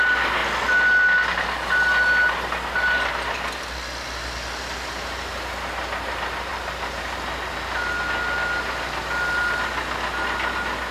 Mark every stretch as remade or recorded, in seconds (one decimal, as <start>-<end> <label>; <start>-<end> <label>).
0.0-10.9 recorded